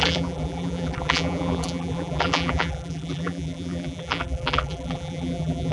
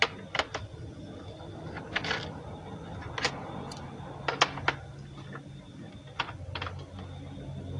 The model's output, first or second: first